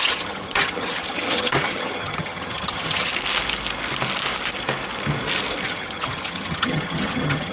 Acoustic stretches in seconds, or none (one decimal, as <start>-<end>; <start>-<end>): 3.1-5.7